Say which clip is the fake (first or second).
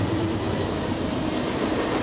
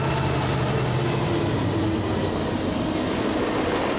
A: first